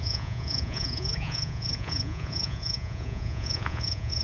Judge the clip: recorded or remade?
remade